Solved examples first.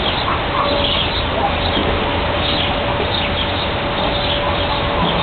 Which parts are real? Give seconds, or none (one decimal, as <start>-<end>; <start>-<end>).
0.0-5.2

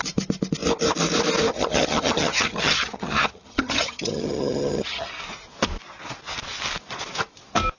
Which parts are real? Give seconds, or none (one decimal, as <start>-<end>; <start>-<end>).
0.0-1.5; 5.1-7.8

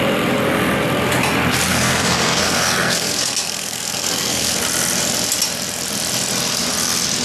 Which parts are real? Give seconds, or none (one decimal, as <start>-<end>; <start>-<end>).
0.0-1.7; 4.6-7.2

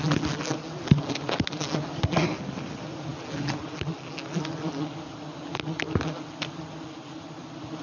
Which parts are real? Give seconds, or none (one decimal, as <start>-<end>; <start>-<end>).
0.0-7.8

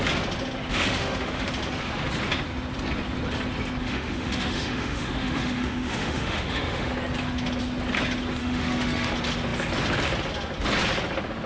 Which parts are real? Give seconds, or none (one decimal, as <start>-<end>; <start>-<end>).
0.0-0.7; 1.5-3.8; 6.9-8.4; 9.1-11.5

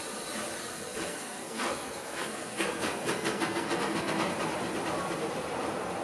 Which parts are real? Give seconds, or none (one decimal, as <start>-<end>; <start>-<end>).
0.0-0.7; 4.3-6.0

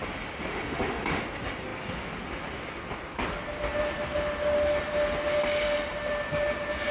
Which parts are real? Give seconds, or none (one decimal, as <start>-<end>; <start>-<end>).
0.0-0.5; 1.2-6.9

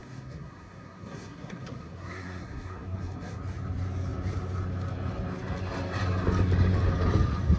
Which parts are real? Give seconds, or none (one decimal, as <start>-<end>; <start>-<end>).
3.4-7.6